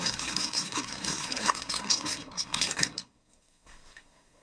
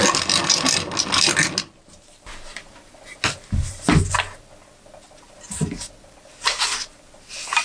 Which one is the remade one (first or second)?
first